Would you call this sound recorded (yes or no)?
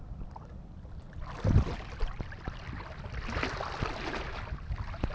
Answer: yes